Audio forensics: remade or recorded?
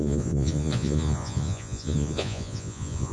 remade